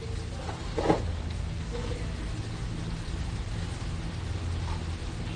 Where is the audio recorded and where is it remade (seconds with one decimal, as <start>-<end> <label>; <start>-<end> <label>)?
0.0-1.1 recorded; 1.1-1.9 remade; 1.9-5.4 recorded